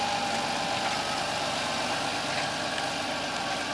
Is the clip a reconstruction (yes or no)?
no